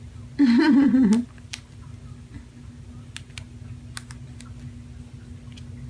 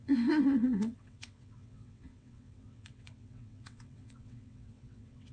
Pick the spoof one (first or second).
second